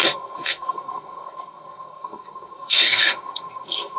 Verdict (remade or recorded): remade